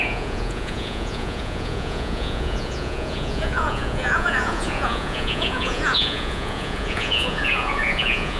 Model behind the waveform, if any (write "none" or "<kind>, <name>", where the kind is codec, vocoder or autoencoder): vocoder, Vocos